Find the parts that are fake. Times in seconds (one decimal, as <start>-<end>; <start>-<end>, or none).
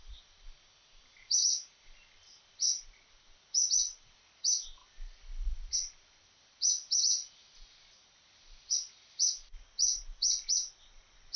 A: none